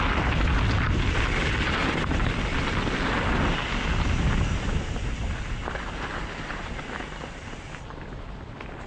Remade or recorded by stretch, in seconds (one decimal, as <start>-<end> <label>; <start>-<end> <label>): 0.0-8.9 recorded

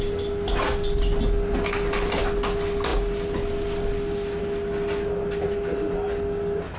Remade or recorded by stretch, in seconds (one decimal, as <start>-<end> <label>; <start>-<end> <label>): 0.0-6.8 recorded

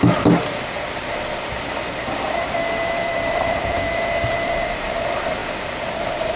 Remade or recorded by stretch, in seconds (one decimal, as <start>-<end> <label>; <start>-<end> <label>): 0.0-6.4 recorded